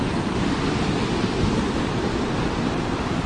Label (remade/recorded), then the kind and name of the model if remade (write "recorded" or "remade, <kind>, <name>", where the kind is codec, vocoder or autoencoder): recorded